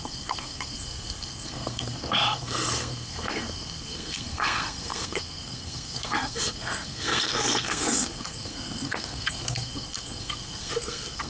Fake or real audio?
fake